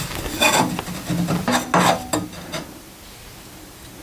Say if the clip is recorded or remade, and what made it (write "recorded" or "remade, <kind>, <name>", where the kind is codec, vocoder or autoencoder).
recorded